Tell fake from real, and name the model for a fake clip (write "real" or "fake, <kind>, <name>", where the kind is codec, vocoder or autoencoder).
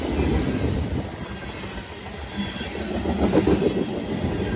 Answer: real